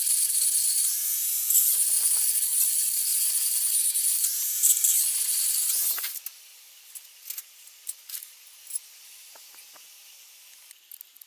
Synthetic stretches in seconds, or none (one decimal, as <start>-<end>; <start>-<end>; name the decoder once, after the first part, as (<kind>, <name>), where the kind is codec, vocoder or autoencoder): none